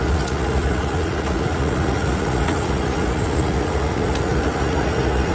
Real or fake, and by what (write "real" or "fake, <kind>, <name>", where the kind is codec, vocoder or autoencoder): fake, vocoder, Vocos